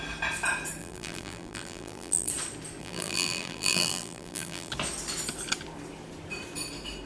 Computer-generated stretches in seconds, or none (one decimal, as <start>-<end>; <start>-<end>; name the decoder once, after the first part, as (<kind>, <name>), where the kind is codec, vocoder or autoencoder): 0.8-2.3 (vocoder, BigVGAN v2); 2.8-4.7